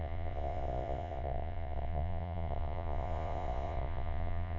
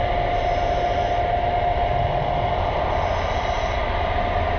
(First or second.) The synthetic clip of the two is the first